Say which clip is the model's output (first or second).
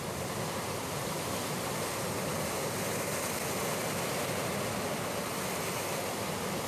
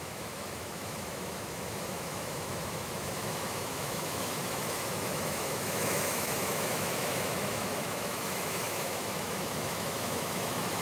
second